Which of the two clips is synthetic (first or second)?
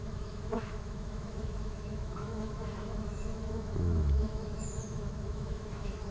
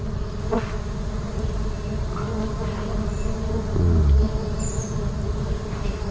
first